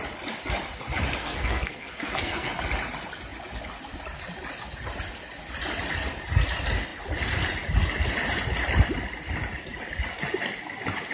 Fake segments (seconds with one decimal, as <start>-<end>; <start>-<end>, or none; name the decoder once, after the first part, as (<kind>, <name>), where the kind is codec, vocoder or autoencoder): 1.2-2.6 (codec, SNAC)